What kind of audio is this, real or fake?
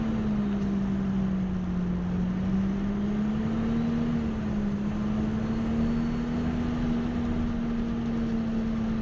real